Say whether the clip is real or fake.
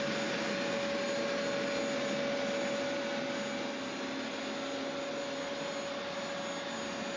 real